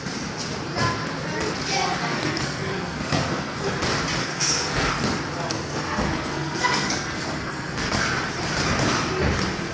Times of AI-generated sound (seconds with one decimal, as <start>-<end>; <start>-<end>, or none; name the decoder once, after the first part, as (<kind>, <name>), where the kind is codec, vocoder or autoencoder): 2.0-3.7 (codec, SNAC); 4.2-4.9; 5.5-8.1